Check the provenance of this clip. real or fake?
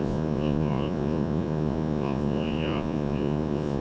fake